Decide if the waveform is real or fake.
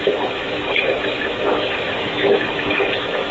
fake